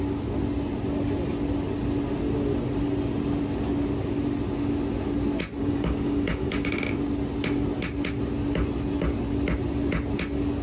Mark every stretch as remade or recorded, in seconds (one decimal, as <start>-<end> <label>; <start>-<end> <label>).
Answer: 0.0-5.6 recorded; 5.6-6.7 remade; 6.7-10.6 recorded